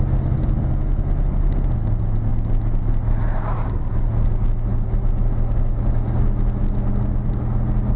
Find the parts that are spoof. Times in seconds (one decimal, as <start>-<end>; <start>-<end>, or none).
none